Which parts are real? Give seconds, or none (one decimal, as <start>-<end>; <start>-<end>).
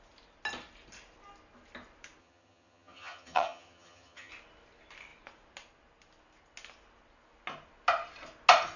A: 0.0-2.2; 4.3-8.8